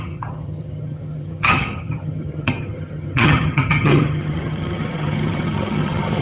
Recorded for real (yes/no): no